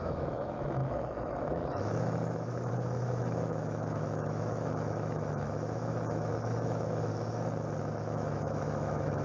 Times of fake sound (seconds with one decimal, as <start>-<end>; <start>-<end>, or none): 0.0-7.1; 7.8-9.2